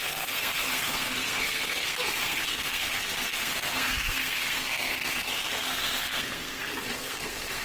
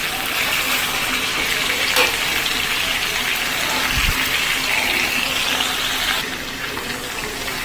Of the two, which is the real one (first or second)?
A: second